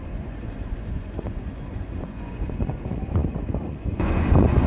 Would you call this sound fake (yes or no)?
yes